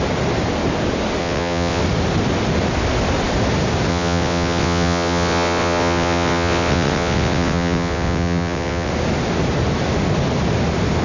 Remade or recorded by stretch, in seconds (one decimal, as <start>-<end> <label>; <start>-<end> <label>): 0.0-1.2 recorded; 1.2-1.8 remade; 1.8-3.9 recorded; 3.9-8.9 remade; 8.9-11.0 recorded